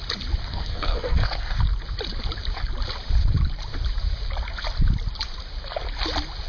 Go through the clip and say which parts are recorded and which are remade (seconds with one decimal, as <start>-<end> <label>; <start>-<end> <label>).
0.0-0.4 recorded; 0.4-1.6 remade; 1.6-6.5 recorded